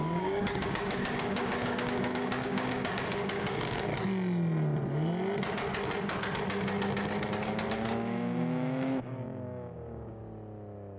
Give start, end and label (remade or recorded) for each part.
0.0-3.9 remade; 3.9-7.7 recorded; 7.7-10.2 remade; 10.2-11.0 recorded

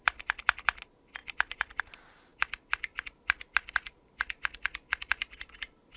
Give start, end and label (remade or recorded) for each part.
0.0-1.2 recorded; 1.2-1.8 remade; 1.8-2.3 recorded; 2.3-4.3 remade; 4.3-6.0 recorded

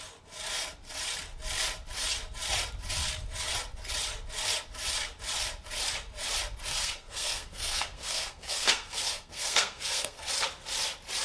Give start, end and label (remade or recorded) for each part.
0.0-6.7 recorded; 6.7-10.3 remade; 10.3-11.2 recorded